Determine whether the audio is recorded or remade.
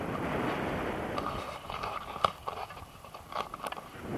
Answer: recorded